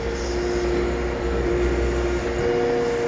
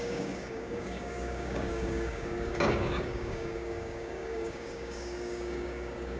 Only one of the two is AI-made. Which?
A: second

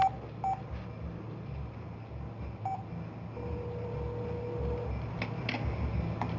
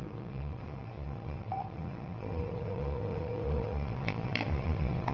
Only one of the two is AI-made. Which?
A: second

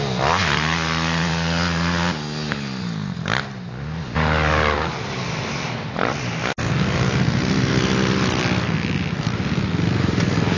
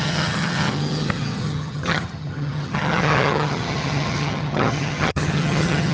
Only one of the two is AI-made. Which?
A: second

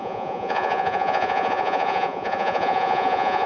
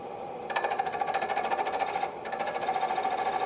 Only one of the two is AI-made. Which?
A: first